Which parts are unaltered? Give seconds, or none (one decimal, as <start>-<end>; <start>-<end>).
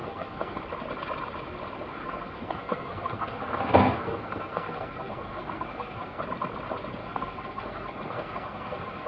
0.6-1.9; 6.2-7.0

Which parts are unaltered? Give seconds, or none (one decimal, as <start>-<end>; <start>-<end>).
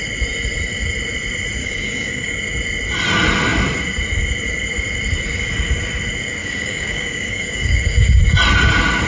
0.0-1.6; 2.3-6.4; 8.2-9.1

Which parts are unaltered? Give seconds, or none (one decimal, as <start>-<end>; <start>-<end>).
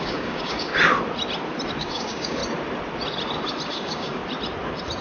0.7-1.8; 2.4-3.7; 4.2-5.0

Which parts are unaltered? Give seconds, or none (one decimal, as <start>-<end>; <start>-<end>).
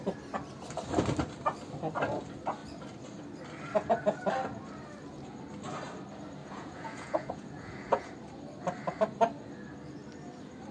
0.0-6.4; 8.1-10.7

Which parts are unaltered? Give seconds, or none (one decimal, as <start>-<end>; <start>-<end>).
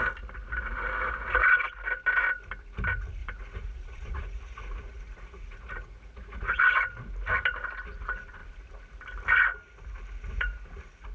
0.0-3.2; 6.6-11.1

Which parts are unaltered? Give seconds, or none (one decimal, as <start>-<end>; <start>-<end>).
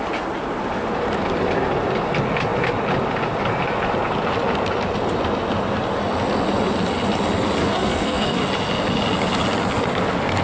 0.0-7.6; 8.4-10.4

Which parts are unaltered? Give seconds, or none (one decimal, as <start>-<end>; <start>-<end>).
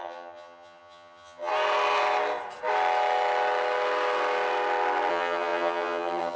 1.5-5.1